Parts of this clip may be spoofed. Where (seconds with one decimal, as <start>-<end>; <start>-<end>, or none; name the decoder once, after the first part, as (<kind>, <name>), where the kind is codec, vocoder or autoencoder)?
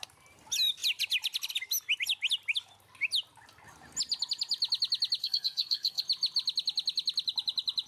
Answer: 5.2-6.0 (codec, SNAC)